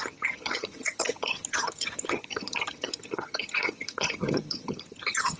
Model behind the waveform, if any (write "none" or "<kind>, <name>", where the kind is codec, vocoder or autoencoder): vocoder, HiFi-GAN